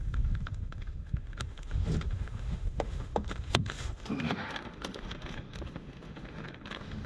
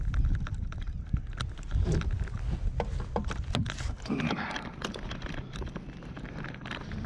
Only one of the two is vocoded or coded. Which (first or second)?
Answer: first